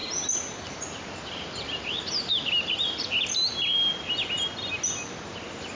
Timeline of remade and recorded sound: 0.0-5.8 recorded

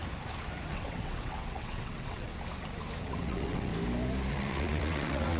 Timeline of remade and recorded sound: 0.0-0.7 recorded; 0.7-2.3 remade; 2.3-3.0 recorded; 3.0-3.7 remade; 3.7-4.3 recorded; 4.3-5.4 remade

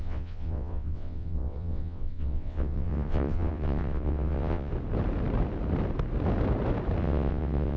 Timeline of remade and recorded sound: 0.0-4.7 remade; 4.7-7.0 recorded; 7.0-7.8 remade

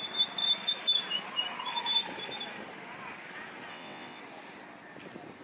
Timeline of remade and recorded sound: 0.0-3.7 recorded; 3.7-4.2 remade; 4.2-5.4 recorded

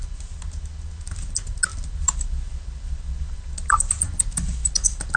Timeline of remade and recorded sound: 0.0-5.2 recorded

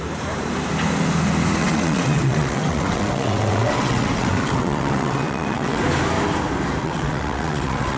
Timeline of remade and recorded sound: 0.0-1.6 recorded; 1.6-5.8 remade; 5.8-6.8 recorded; 6.8-8.0 remade